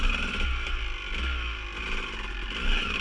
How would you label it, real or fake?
real